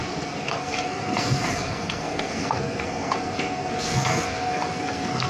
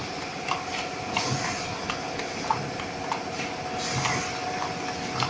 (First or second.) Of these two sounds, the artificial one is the first